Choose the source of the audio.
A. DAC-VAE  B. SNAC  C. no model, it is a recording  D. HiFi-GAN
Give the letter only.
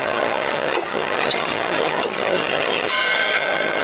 D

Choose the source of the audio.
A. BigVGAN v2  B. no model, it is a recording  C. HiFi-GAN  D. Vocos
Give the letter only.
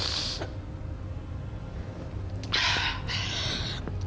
B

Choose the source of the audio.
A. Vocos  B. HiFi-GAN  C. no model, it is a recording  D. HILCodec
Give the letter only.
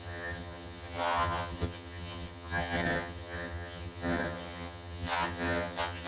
B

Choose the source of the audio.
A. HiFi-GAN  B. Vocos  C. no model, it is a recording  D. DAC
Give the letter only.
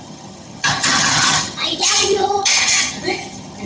A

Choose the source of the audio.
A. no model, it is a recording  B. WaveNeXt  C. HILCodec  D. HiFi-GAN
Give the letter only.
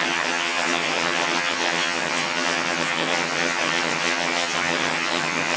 D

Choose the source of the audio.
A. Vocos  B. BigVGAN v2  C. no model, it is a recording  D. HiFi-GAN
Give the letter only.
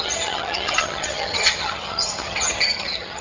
D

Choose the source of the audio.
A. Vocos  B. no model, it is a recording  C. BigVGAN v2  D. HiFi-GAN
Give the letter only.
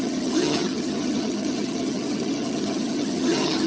D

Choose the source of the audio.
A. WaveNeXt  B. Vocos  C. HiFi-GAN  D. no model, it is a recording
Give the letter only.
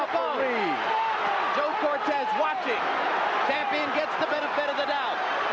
D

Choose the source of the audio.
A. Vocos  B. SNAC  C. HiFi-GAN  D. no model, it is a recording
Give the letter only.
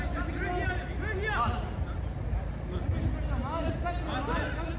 D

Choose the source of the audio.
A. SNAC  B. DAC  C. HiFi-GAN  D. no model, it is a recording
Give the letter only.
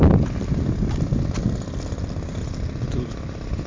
D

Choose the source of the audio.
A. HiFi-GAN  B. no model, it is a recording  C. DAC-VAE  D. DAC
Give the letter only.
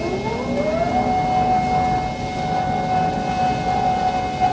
B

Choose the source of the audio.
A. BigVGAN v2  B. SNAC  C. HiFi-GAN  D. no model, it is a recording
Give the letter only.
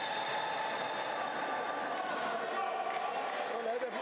D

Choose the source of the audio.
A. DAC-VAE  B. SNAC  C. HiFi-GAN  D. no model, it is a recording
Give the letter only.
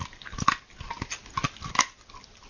D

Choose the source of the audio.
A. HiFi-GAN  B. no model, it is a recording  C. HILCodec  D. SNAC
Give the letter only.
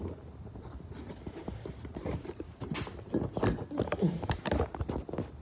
B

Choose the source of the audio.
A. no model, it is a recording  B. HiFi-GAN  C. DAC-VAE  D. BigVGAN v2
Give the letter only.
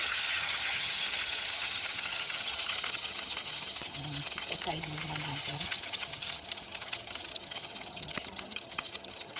B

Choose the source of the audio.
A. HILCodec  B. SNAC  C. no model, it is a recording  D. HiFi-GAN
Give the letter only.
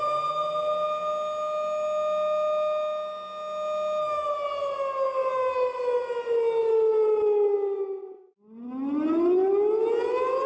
C